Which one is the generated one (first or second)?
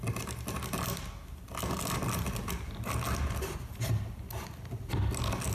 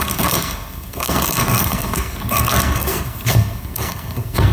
second